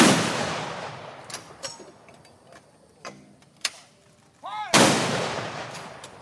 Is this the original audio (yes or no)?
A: no